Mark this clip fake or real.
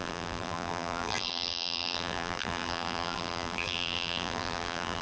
fake